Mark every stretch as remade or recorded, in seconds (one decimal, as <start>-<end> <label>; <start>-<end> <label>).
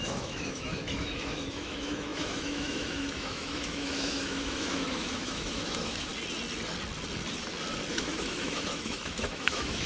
0.0-6.1 remade; 6.1-7.9 recorded; 7.9-9.9 remade